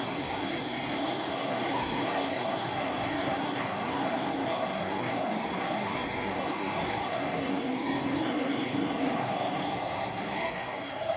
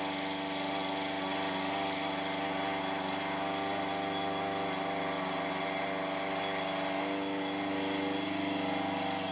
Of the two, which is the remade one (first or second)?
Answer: first